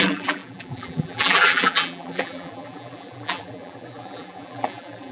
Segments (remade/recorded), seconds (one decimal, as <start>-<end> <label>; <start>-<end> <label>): 0.0-5.1 remade